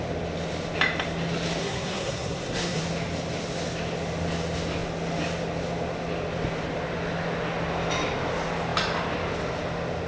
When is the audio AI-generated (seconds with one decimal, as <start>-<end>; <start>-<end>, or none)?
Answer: 1.6-2.8